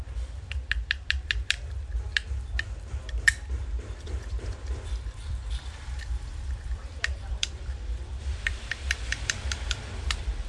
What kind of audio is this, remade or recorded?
remade